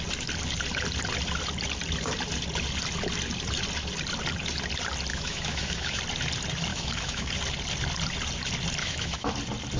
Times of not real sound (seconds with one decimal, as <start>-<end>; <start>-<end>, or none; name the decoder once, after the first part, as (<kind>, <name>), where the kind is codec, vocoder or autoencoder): 5.1-6.0 (autoencoder, DAC-VAE); 6.7-7.3; 8.8-9.3